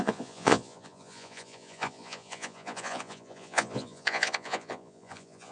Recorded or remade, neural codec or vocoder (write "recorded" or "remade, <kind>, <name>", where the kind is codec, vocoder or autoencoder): remade, vocoder, Vocos